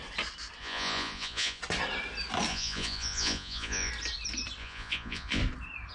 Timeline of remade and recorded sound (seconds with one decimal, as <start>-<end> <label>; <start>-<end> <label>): 0.0-0.6 recorded; 0.6-1.6 remade; 1.6-2.5 recorded; 2.5-3.9 remade; 3.9-4.6 recorded; 4.6-5.4 remade; 5.4-5.9 recorded